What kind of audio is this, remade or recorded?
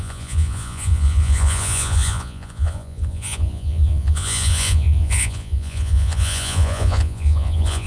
remade